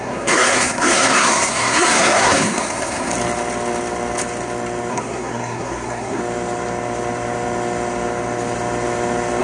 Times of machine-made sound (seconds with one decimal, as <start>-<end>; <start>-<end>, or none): 0.0-3.1; 4.9-6.2